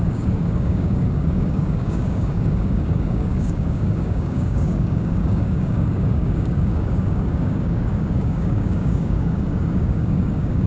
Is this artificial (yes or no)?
yes